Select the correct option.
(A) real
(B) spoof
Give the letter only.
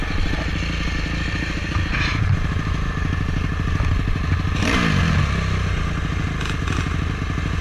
A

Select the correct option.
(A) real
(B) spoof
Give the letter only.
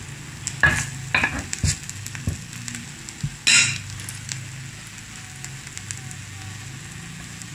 A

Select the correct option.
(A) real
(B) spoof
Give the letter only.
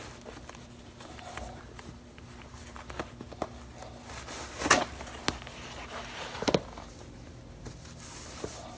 A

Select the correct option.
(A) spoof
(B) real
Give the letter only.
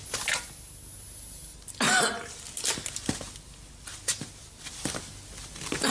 B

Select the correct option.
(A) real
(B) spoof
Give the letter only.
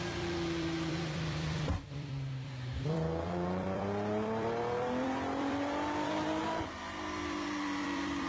B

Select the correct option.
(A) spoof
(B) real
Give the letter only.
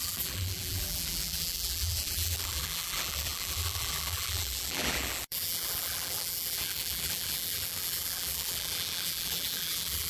A